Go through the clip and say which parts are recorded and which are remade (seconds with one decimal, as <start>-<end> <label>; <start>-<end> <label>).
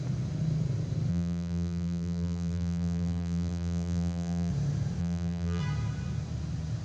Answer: 0.0-1.1 recorded; 1.1-4.5 remade; 4.5-5.0 recorded; 5.0-5.6 remade; 5.6-6.8 recorded